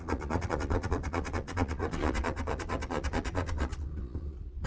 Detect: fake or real fake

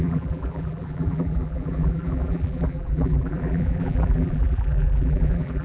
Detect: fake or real fake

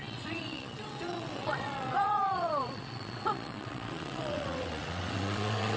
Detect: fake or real fake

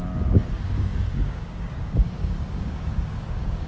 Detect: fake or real fake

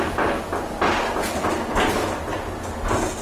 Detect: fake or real real